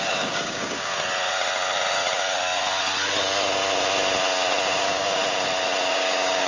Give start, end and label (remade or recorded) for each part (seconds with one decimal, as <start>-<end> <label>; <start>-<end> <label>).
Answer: 0.0-0.9 remade; 0.9-4.8 recorded; 4.8-5.2 remade; 5.2-5.9 recorded; 5.9-6.5 remade